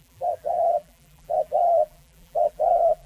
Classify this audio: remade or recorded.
remade